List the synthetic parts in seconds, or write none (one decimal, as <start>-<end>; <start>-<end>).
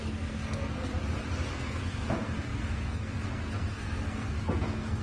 0.0-0.9; 1.5-5.0